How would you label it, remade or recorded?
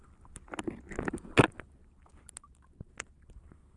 recorded